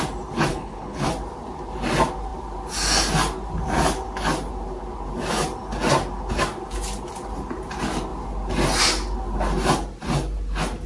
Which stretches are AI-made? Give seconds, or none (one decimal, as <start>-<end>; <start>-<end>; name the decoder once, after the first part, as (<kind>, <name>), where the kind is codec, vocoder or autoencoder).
0.5-1.1 (codec, HILCodec)